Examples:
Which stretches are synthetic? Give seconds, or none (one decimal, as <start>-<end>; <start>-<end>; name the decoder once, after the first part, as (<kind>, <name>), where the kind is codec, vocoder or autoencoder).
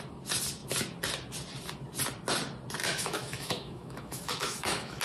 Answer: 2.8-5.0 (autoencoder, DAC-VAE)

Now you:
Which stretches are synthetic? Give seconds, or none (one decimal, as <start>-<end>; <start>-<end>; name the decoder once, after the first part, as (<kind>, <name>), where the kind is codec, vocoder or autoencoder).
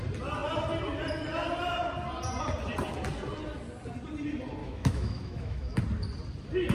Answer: 4.6-5.8 (autoencoder, DAC-VAE)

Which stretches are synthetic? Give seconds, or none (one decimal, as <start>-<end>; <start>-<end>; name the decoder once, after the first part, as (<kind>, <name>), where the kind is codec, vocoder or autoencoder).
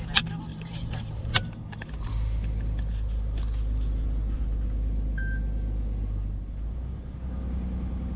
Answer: 0.5-1.6 (vocoder, BigVGAN v2)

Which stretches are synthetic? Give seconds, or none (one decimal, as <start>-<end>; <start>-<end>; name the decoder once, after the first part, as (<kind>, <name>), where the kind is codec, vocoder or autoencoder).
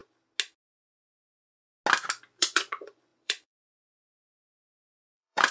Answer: 1.0-1.5 (vocoder, Vocos); 2.4-5.5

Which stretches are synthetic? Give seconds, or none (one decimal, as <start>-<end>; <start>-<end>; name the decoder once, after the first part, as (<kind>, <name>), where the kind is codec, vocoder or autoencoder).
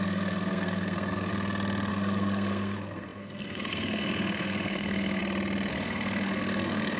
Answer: 0.0-1.3 (codec, SNAC); 1.9-5.2; 5.7-7.0